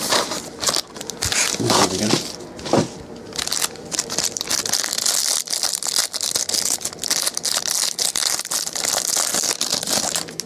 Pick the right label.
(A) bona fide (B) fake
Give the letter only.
A